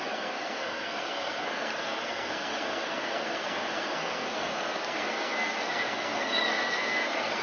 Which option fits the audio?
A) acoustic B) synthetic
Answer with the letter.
B